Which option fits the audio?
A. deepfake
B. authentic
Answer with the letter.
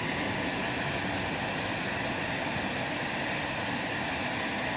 B